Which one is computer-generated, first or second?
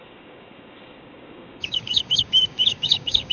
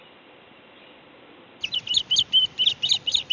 first